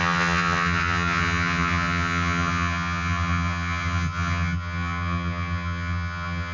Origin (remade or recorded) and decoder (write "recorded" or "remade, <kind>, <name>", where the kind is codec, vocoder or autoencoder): remade, vocoder, HiFi-GAN